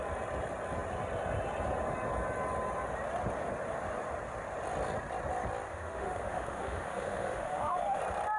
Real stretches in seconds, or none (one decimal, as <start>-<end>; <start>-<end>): 0.0-5.7; 8.0-8.4

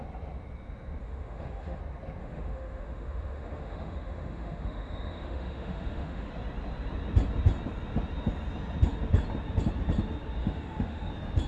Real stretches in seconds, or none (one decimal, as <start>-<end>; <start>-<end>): 0.0-1.0; 1.8-2.2; 6.3-10.4; 11.1-11.5